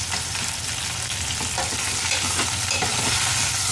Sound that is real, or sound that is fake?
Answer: real